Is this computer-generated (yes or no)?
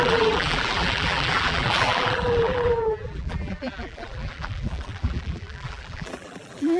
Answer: yes